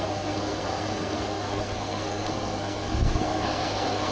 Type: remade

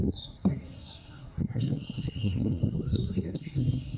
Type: remade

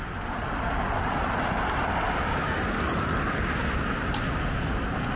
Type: recorded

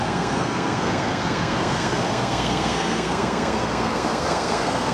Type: remade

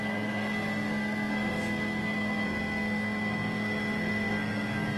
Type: remade